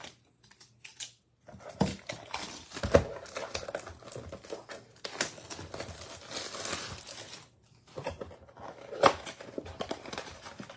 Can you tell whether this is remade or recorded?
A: recorded